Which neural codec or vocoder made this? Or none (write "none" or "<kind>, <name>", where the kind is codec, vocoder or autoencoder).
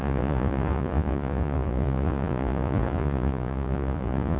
vocoder, Vocos